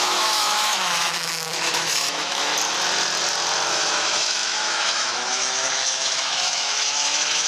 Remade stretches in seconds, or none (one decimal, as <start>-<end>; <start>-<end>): 0.0-2.5; 3.7-7.5